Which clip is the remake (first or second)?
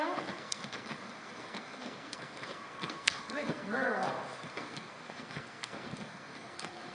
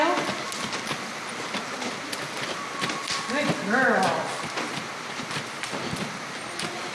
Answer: first